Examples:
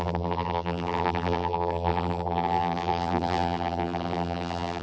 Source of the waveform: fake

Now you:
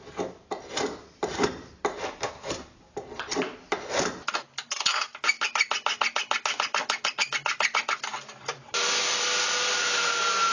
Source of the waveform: real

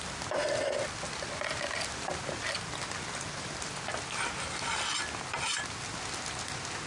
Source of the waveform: real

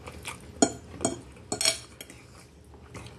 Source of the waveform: real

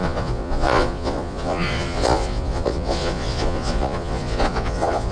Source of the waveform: fake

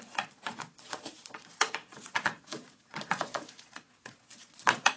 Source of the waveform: fake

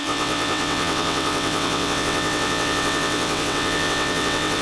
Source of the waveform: fake